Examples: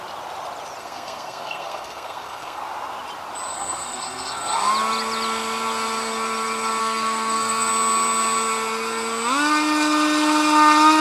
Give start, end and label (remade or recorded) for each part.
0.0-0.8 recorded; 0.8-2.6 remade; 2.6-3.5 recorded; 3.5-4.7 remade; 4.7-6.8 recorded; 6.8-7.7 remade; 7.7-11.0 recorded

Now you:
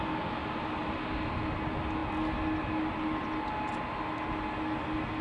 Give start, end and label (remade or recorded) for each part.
0.0-0.4 recorded; 0.4-1.0 remade; 1.0-5.2 recorded

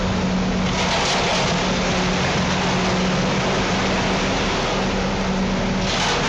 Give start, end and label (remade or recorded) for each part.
0.0-6.3 recorded

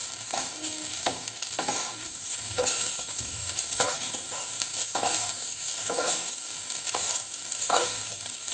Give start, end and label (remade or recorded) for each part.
0.0-8.5 remade

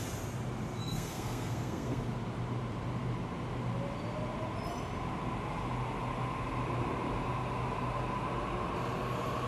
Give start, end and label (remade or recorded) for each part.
0.0-0.8 recorded; 0.8-2.0 remade; 2.0-9.5 recorded

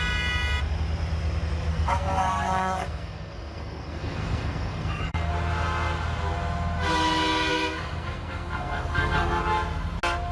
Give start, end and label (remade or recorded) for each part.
0.0-1.7 recorded; 1.7-5.3 remade; 5.3-7.5 recorded; 7.5-9.4 remade; 9.4-10.3 recorded

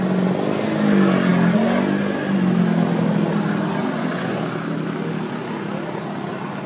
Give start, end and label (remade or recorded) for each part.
0.0-3.8 recorded; 3.8-4.4 remade; 4.4-6.7 recorded